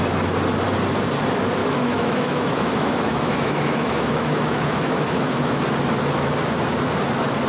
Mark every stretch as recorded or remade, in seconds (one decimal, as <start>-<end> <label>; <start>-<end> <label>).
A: 0.0-1.6 recorded; 1.6-5.6 remade; 5.6-7.5 recorded